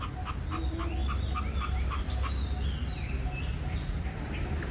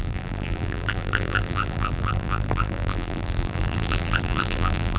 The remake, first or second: second